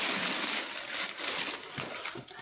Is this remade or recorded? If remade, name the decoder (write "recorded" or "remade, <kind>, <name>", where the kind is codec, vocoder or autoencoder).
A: recorded